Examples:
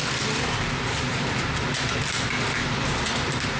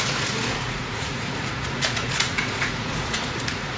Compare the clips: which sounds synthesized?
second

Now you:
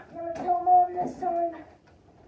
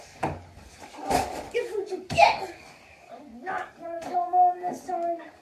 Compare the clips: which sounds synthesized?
second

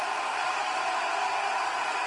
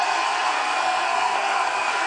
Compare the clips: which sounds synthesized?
second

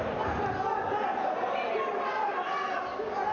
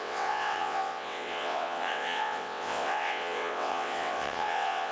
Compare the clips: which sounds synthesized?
second